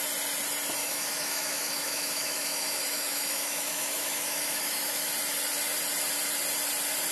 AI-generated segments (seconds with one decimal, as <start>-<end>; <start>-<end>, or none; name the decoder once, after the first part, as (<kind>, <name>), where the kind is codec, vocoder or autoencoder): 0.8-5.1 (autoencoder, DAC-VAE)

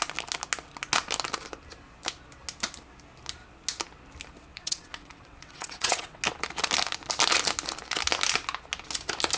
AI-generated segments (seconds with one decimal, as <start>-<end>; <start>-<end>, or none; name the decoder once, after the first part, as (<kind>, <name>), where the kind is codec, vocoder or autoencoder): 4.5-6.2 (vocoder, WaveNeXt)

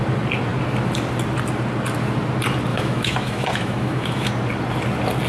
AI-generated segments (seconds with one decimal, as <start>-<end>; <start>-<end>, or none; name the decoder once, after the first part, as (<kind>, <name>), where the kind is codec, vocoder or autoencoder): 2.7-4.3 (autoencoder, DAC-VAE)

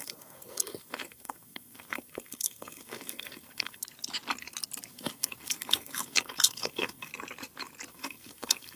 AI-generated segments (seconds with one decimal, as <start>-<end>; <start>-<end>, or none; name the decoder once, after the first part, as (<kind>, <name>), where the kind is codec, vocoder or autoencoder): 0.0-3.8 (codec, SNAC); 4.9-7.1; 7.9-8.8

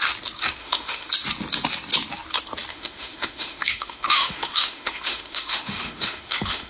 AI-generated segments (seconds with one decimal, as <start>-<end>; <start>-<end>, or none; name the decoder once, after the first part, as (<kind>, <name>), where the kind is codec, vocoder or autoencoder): 0.6-1.1 (autoencoder, DAC-VAE); 2.7-6.7